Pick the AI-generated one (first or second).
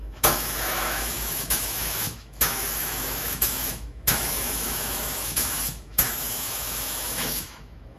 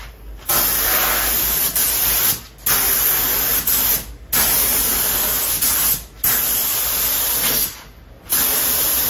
first